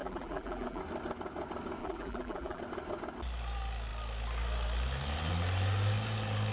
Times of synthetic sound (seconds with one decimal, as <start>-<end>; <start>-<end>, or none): 0.0-0.8; 1.8-2.6